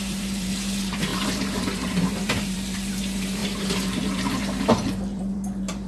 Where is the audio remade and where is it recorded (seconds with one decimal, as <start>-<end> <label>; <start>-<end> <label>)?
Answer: 0.0-5.9 remade